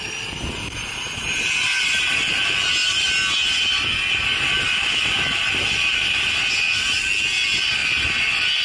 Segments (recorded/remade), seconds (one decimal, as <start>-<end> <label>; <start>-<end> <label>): 0.0-8.6 recorded